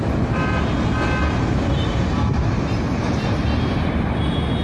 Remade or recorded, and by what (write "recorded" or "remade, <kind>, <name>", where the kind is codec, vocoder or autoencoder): recorded